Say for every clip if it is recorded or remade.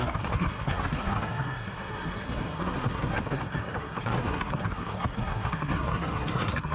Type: remade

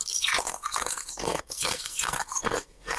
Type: remade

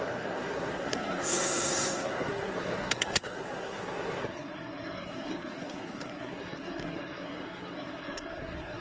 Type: remade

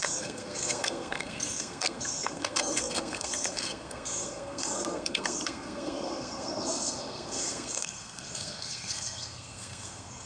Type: remade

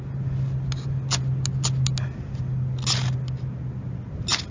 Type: recorded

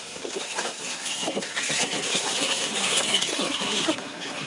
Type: remade